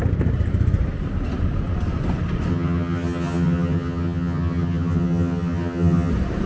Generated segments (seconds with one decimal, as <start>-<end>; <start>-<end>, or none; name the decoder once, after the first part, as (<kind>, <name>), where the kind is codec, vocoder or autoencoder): 2.5-6.1 (vocoder, HiFi-GAN)